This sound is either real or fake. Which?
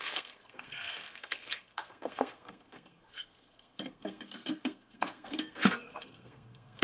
fake